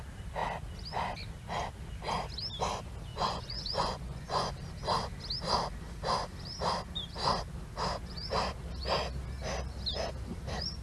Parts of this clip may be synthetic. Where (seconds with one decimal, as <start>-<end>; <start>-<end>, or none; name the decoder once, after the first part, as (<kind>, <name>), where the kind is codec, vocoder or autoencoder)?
3.1-4.5 (vocoder, Vocos)